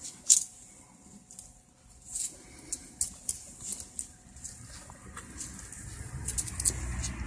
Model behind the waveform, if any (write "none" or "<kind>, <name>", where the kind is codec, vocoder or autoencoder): none